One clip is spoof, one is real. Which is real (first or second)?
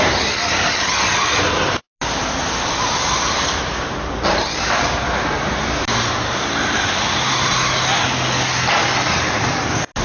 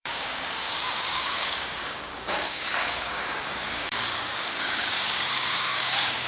first